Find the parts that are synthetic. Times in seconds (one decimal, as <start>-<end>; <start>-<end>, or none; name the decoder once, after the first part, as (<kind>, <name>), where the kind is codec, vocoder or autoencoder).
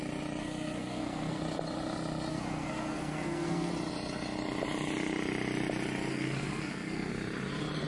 0.4-1.4 (codec, SNAC); 2.3-3.7; 6.1-7.1